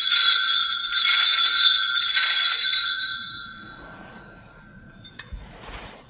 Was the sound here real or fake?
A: fake